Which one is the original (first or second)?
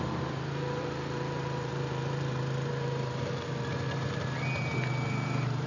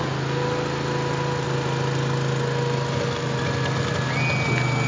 second